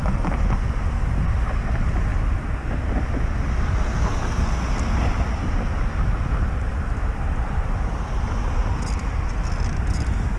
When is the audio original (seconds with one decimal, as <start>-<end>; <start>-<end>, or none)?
0.0-7.0; 9.3-10.4